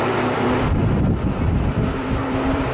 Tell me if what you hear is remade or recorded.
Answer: remade